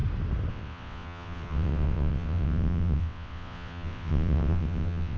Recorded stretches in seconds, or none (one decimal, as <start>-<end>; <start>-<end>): 0.0-0.5